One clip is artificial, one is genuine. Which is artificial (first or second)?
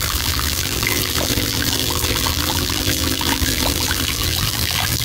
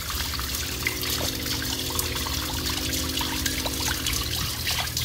first